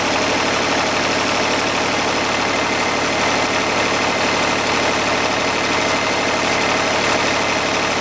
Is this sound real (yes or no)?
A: yes